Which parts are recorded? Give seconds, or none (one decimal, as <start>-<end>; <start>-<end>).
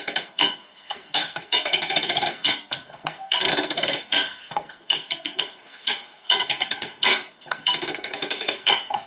none